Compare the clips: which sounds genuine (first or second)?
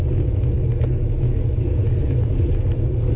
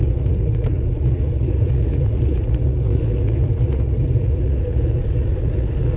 first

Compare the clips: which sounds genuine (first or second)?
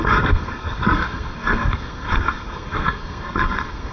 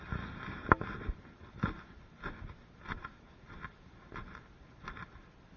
second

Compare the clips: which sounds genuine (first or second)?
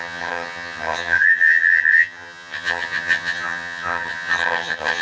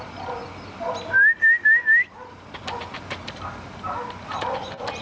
second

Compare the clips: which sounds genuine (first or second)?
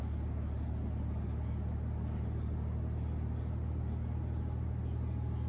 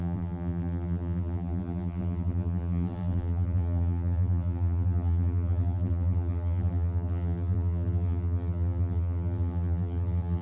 first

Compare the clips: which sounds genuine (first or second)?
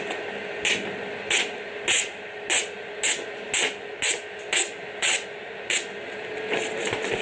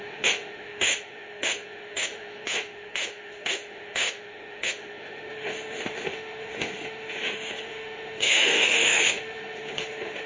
first